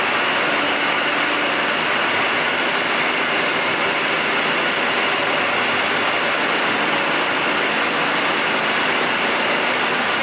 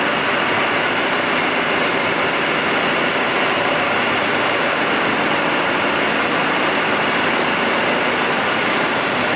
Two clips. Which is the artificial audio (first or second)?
second